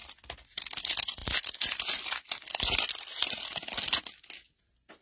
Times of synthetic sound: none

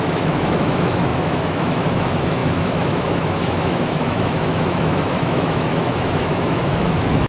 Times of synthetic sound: 0.0-7.3 (autoencoder, DAC-VAE)